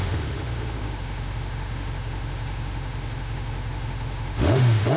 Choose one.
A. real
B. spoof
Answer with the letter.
B